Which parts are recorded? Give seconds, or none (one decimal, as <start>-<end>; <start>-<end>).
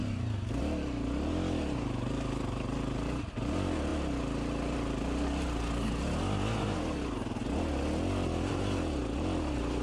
0.0-9.8